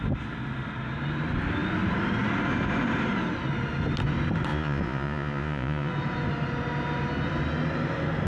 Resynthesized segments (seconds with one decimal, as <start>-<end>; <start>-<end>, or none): 4.5-5.9